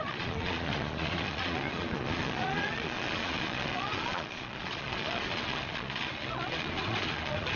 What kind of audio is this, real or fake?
fake